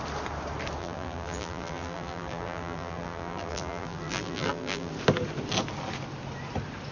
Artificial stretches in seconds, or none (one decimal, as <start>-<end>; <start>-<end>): 0.8-4.9